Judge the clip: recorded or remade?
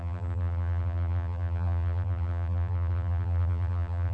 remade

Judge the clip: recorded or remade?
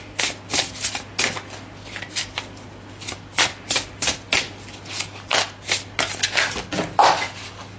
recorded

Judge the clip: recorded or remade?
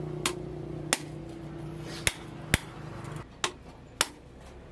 recorded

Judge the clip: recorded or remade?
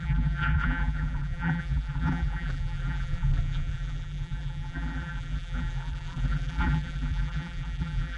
remade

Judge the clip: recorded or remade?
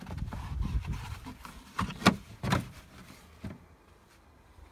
remade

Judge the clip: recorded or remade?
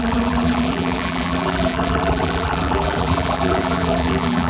remade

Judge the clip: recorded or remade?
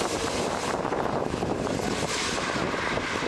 remade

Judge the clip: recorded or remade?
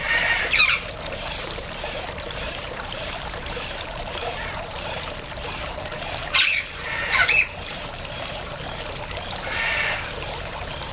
remade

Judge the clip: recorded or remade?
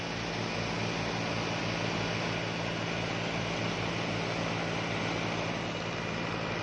recorded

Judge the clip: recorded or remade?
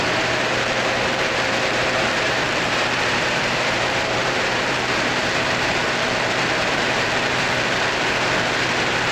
remade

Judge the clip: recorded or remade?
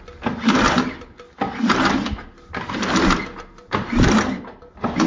recorded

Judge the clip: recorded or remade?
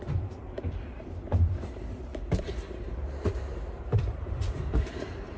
remade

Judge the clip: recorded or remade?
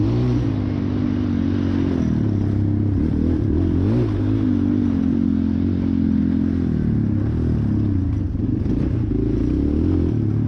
recorded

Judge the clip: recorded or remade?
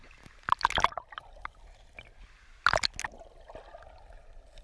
recorded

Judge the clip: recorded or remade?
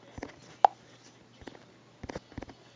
recorded